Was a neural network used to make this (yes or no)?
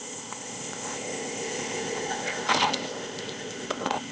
yes